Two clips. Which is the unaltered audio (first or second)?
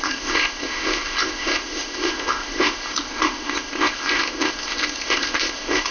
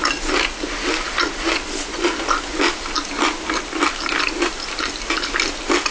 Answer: second